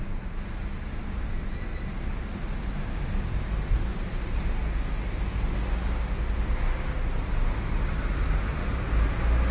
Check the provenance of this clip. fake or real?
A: real